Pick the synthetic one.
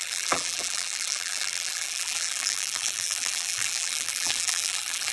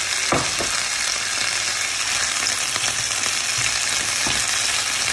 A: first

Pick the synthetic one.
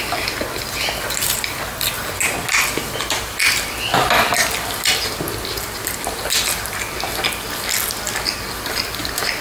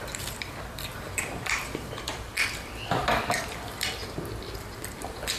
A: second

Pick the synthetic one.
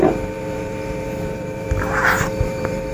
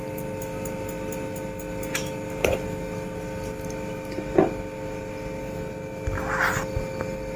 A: first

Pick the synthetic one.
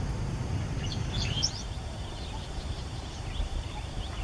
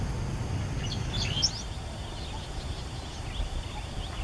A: first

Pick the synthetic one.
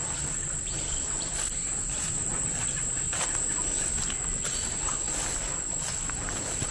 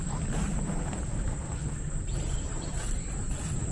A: second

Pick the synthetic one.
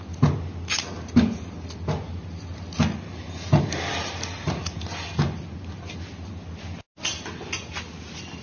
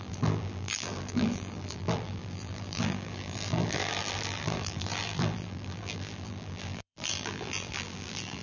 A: second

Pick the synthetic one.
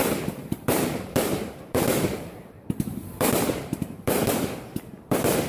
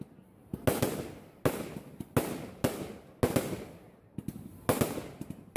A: first